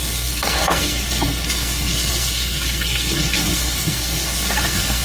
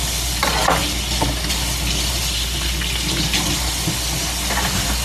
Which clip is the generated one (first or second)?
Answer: first